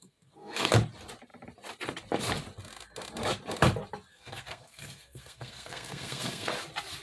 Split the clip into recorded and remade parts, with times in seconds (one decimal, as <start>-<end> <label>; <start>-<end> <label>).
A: 0.0-0.7 remade; 0.7-4.1 recorded; 4.1-6.5 remade; 6.5-7.0 recorded